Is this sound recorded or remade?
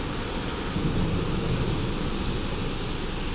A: recorded